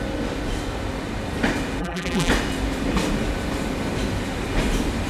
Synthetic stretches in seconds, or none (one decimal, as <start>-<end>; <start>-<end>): 1.8-2.3